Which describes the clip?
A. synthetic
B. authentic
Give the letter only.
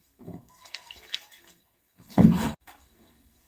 A